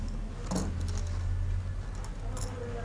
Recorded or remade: recorded